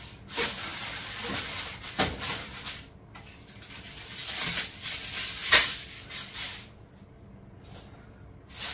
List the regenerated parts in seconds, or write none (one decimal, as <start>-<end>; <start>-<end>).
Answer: none